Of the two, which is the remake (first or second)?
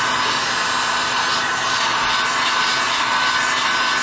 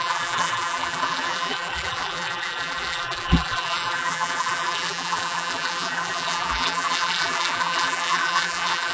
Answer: second